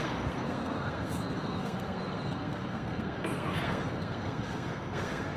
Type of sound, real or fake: fake